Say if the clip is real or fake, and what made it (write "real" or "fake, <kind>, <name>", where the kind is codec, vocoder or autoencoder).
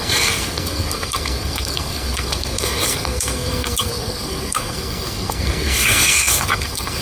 fake, codec, SNAC